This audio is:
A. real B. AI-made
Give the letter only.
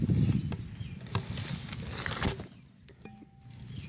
A